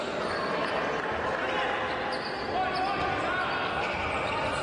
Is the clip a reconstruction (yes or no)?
no